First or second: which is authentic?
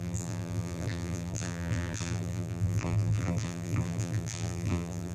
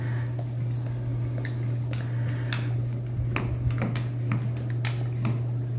second